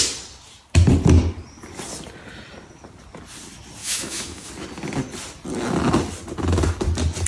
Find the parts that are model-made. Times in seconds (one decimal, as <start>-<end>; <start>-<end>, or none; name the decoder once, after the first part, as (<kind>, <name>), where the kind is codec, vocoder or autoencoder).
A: 3.8-4.5 (autoencoder, DAC-VAE)